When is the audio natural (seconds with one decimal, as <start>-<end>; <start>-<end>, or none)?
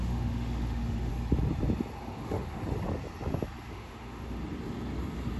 1.1-2.0; 2.6-3.7; 4.4-5.4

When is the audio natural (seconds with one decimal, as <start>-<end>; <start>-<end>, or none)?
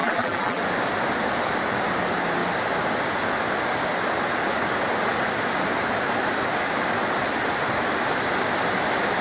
0.6-9.2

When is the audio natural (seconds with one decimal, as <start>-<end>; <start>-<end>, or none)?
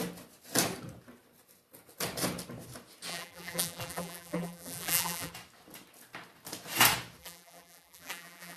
0.0-3.1; 5.3-7.2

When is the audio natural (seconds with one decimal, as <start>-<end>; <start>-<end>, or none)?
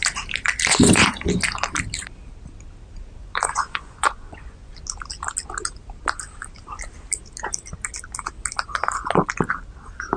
0.0-3.2; 4.7-10.2